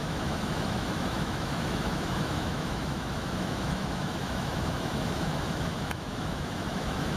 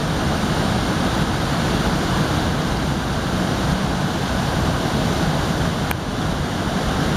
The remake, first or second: first